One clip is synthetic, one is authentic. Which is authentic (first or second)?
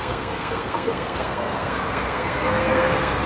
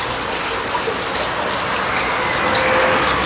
second